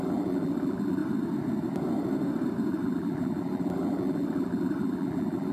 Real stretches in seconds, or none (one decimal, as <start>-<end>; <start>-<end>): 1.0-2.7